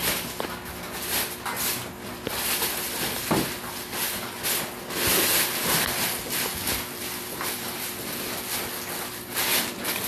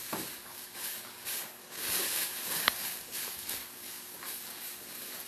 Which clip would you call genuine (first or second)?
first